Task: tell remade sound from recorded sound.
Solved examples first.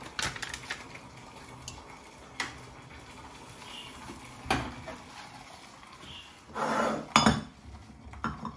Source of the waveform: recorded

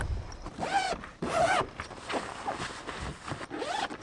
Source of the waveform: recorded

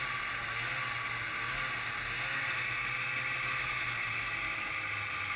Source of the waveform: recorded